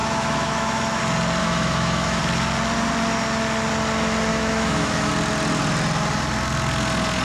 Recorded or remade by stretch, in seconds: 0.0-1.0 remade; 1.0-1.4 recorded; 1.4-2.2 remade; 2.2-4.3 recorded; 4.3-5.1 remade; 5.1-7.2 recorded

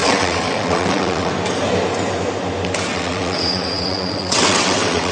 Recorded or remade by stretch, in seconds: 0.0-1.3 remade; 1.3-2.9 recorded; 2.9-5.1 remade

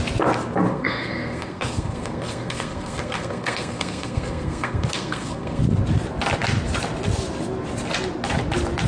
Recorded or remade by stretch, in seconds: 0.0-0.7 recorded; 0.7-5.6 remade; 5.6-8.9 recorded

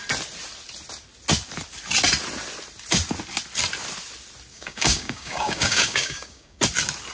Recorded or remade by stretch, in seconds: 0.0-4.5 recorded; 4.5-6.6 remade; 6.6-7.1 recorded